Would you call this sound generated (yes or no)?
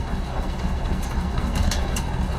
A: yes